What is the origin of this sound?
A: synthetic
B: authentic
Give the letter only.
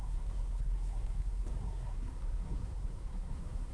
A